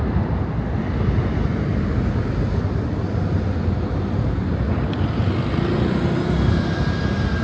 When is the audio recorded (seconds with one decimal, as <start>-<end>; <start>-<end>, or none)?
0.0-1.5; 3.4-7.4